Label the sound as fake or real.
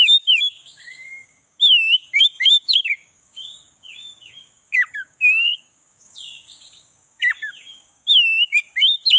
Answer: fake